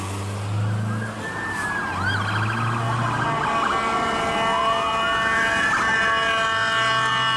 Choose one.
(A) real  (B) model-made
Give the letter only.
A